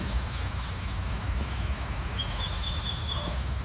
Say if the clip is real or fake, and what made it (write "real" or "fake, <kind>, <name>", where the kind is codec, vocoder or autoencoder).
fake, autoencoder, DAC-VAE